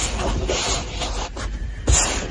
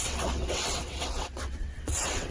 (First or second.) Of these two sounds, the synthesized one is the second